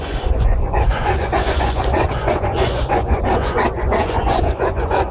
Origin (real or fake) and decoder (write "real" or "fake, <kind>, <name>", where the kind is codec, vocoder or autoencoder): fake, vocoder, Vocos